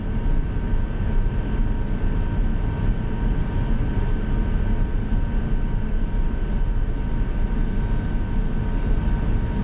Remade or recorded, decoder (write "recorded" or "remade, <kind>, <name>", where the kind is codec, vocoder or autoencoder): recorded